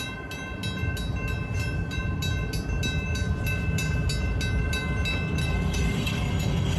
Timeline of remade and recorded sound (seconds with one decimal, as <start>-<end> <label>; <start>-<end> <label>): 0.0-5.4 recorded; 5.4-6.8 remade